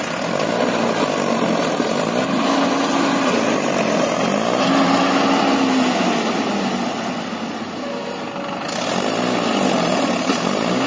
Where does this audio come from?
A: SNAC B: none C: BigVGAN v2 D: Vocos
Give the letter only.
B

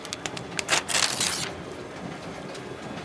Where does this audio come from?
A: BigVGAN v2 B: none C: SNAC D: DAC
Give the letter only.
B